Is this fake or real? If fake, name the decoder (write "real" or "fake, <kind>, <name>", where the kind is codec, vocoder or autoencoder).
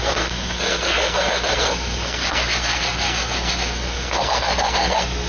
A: fake, codec, SNAC